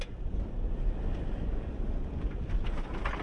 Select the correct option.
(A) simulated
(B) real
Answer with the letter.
B